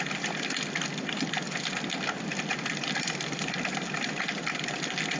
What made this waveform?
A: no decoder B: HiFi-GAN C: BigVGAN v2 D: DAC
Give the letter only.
A